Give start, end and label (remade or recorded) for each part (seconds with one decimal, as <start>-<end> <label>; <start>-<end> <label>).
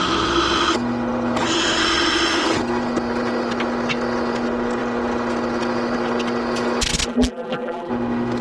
0.0-7.1 recorded; 7.1-7.9 remade; 7.9-8.4 recorded